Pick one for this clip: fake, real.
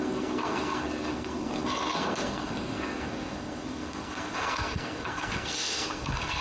fake